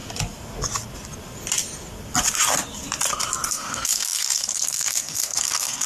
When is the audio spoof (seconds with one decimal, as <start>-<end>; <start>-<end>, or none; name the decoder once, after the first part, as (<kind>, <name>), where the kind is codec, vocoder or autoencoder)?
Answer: 3.5-5.9 (codec, SNAC)